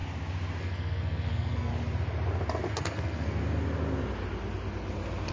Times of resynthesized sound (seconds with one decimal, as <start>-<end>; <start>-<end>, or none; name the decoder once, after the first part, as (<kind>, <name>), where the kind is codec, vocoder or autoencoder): 0.6-1.7 (codec, SNAC); 2.8-3.4